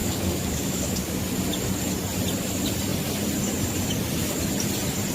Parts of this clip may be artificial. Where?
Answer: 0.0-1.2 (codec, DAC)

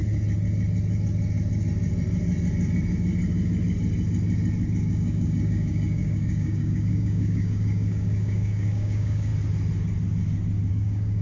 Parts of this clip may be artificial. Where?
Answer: 4.8-9.3 (codec, DAC); 10.7-11.2

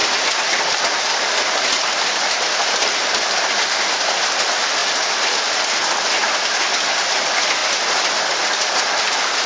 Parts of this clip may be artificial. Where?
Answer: none

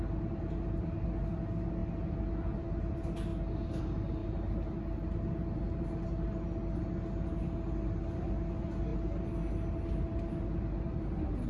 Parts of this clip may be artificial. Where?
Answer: none

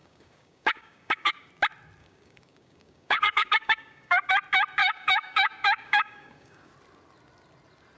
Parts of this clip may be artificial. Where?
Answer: 0.0-1.5 (codec, DAC); 2.0-4.3; 4.8-6.7

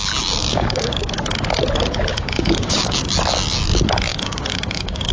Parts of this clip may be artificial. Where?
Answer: 0.4-1.0 (codec, DAC); 2.1-3.0; 4.1-5.1

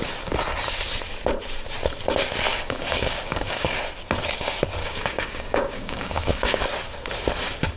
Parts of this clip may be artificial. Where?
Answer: 2.5-3.7 (codec, DAC); 4.8-6.6